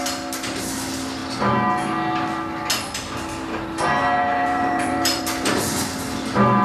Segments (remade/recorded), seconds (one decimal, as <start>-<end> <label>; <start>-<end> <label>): 0.0-4.3 recorded; 4.3-5.2 remade; 5.2-6.6 recorded